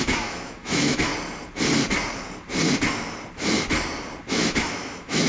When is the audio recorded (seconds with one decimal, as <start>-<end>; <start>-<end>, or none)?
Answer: 1.1-4.3